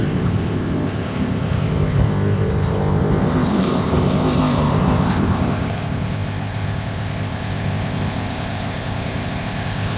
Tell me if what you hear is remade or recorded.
remade